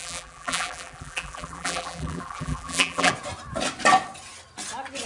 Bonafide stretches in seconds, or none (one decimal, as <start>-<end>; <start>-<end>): 3.1-5.1